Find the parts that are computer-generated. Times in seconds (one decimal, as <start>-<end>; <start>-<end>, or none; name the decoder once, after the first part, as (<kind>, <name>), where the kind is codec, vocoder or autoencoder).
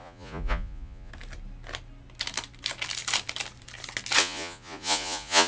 0.0-1.1 (vocoder, Vocos); 4.2-5.5